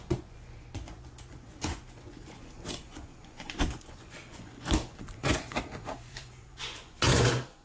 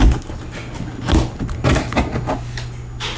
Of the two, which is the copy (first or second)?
first